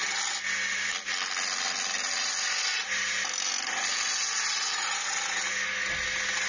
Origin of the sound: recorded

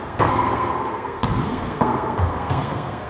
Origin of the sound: remade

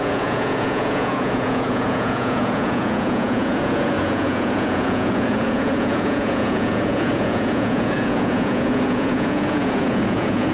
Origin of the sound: remade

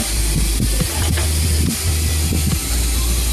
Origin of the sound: recorded